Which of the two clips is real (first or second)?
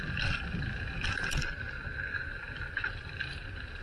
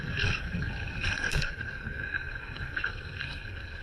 first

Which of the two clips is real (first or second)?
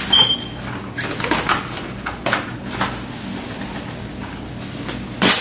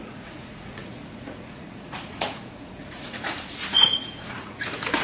first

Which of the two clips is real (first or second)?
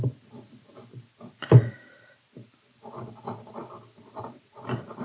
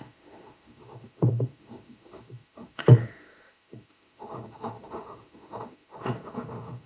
first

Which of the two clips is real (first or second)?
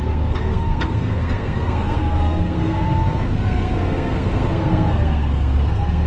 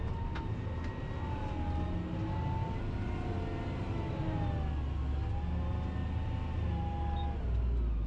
second